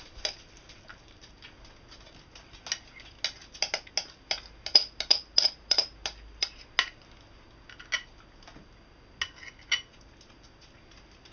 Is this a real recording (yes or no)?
yes